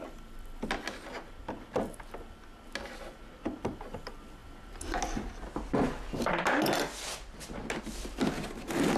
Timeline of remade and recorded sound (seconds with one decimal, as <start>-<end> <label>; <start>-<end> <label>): 0.0-9.0 recorded